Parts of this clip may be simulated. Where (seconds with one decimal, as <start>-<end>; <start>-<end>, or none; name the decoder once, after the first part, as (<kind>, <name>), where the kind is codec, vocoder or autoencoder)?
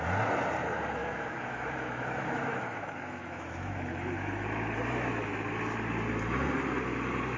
1.0-5.3 (autoencoder, DAC-VAE)